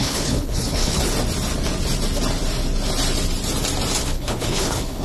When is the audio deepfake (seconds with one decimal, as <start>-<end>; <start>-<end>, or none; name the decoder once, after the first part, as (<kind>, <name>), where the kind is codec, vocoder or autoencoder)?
0.0-1.0 (codec, HILCodec); 4.0-5.0